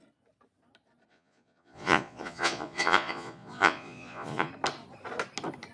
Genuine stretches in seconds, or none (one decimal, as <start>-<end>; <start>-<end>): 0.0-1.1; 4.5-5.7